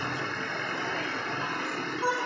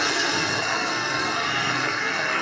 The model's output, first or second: second